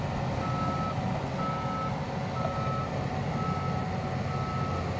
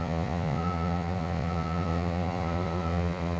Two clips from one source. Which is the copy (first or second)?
second